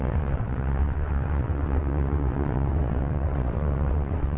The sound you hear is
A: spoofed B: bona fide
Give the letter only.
A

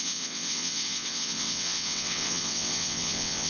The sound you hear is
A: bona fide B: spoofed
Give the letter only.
B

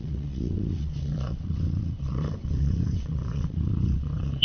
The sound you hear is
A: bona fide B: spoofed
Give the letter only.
B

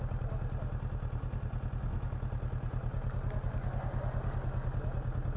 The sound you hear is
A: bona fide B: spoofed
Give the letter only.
A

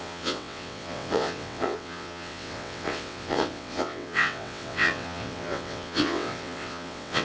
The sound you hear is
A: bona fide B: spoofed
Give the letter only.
B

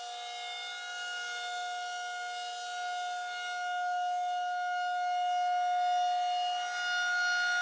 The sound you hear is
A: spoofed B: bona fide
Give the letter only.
B